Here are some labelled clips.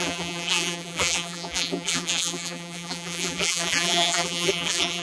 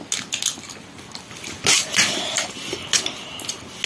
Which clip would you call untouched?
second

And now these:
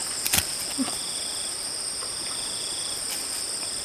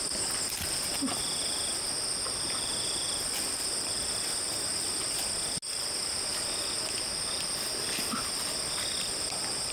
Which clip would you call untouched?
second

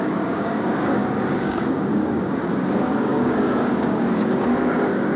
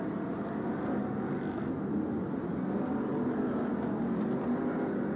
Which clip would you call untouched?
second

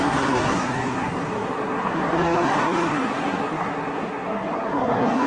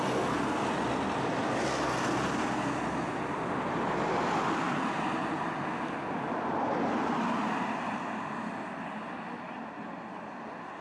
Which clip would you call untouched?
second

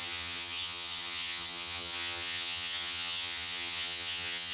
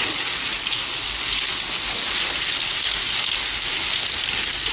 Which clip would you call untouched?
second